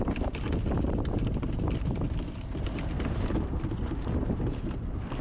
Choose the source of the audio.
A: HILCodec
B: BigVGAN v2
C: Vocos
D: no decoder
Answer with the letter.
D